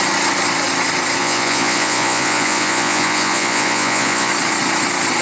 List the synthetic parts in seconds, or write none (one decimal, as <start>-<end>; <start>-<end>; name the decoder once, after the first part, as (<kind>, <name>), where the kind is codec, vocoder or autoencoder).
1.2-4.3 (vocoder, Vocos)

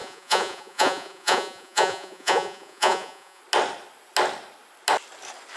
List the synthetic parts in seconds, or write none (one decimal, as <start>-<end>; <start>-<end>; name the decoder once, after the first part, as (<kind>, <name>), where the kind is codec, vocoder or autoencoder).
0.0-3.4 (vocoder, Vocos)